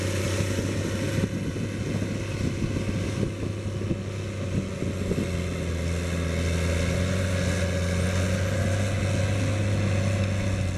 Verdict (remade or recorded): recorded